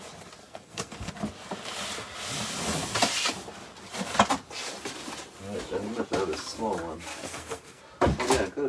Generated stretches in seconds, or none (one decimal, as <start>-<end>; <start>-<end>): 0.4-1.1; 7.1-7.8